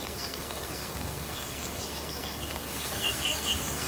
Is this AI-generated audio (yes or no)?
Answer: yes